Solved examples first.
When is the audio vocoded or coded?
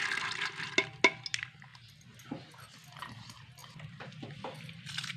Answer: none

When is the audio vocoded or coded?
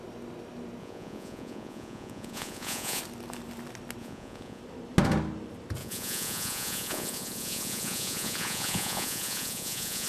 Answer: 0.8-3.0 (vocoder, Vocos); 4.0-4.6; 5.8-10.1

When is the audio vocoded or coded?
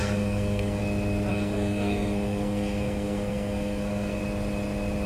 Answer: 0.0-0.8 (codec, SNAC); 1.3-4.2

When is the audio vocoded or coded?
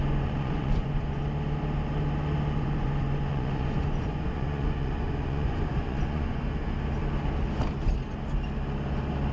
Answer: 0.0-1.2 (vocoder, Vocos); 2.6-6.4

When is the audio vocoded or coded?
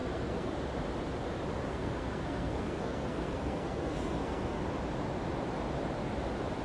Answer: 0.0-0.5 (codec, SNAC); 1.7-4.6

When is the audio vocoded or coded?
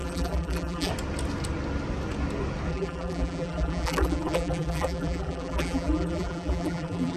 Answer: 0.0-0.9 (vocoder, BigVGAN v2); 2.7-7.2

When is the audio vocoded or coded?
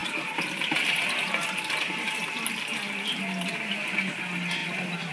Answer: 0.0-0.9 (vocoder, BigVGAN v2); 2.2-3.5